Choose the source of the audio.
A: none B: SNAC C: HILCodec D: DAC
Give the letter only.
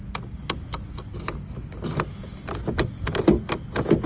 A